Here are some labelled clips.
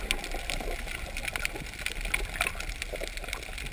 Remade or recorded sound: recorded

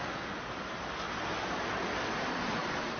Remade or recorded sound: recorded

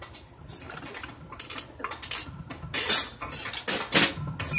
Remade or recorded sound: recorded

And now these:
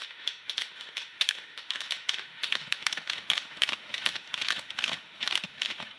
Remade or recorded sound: remade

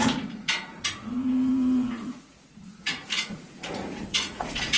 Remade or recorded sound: remade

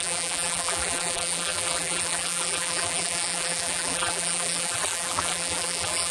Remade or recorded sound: remade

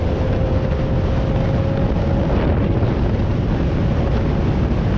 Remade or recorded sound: recorded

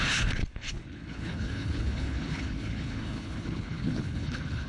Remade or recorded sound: remade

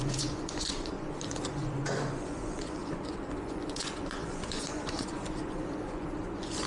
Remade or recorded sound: remade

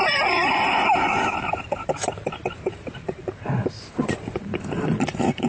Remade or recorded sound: remade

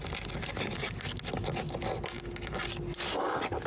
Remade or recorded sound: recorded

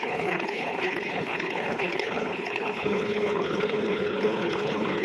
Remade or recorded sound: remade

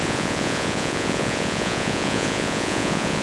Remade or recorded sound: remade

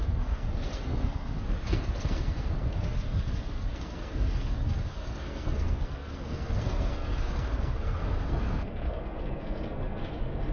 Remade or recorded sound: remade